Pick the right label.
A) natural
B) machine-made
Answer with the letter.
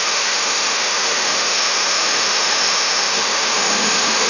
B